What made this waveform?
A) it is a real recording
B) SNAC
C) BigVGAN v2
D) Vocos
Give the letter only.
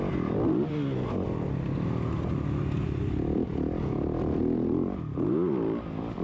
A